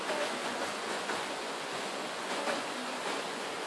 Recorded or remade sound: remade